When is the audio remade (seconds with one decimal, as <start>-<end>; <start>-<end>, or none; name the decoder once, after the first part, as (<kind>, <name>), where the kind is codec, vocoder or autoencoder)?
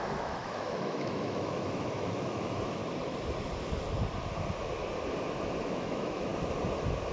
0.0-2.8 (autoencoder, DAC-VAE); 5.6-6.3